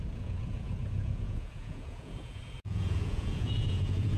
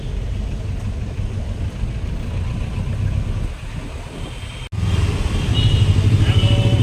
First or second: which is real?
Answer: second